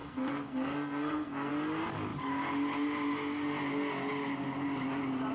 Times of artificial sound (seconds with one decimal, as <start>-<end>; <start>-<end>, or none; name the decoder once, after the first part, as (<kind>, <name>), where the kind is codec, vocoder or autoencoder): 0.0-1.5 (codec, SNAC)